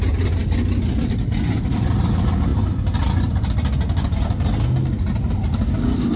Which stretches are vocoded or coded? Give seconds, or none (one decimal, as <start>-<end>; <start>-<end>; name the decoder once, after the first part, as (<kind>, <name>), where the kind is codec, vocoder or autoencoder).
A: none